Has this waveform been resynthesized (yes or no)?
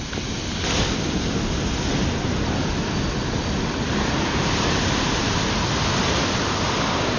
no